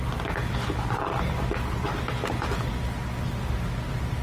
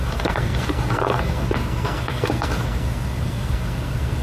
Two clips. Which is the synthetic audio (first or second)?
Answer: second